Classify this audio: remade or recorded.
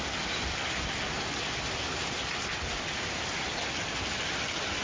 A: recorded